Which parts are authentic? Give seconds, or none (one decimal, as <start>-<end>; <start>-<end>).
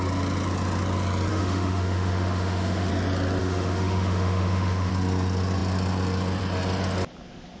0.0-1.3; 2.9-3.4; 4.9-7.6